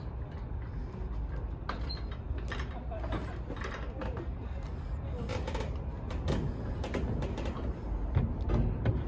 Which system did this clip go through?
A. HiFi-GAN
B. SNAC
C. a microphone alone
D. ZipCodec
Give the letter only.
C